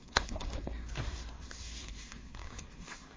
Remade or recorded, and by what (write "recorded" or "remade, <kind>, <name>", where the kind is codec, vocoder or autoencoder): remade, codec, SNAC